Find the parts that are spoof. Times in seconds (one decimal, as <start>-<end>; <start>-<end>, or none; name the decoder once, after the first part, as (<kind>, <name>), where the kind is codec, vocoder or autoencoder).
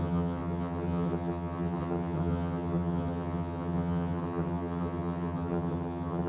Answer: 0.0-6.3 (vocoder, HiFi-GAN)